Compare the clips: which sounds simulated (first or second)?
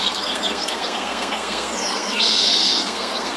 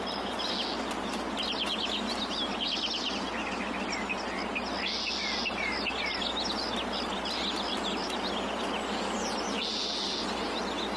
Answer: first